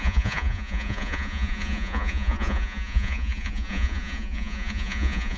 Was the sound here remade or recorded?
remade